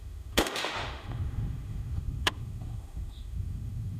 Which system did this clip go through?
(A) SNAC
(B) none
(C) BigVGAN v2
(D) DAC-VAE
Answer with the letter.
D